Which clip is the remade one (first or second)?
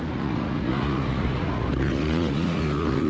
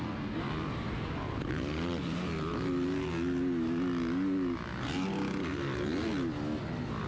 first